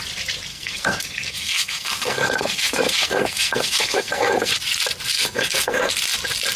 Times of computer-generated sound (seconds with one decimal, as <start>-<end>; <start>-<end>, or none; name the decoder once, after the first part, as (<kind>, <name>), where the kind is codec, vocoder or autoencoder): 0.5-4.5 (codec, SNAC); 5.1-5.9